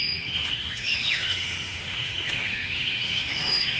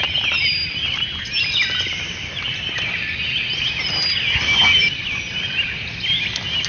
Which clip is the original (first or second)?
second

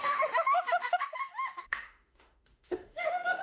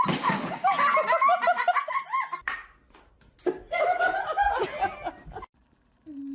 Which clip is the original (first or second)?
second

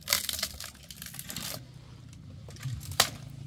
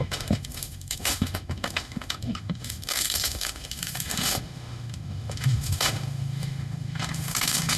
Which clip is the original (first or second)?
first